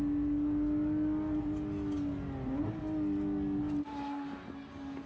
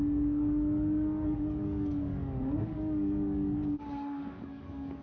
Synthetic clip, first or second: second